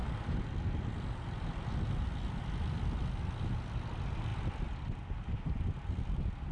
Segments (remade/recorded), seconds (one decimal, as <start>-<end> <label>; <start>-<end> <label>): 0.0-6.5 recorded